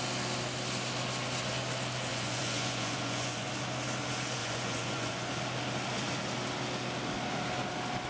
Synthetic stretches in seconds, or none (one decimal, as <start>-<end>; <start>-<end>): 2.1-3.5; 4.4-5.3